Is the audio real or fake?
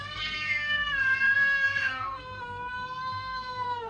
fake